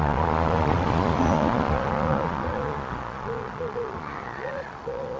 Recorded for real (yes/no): no